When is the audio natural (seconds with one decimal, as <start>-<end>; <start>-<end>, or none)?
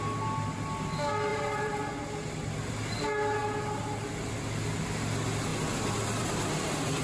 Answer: 0.0-1.3; 1.9-7.0